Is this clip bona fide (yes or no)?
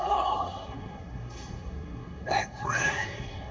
no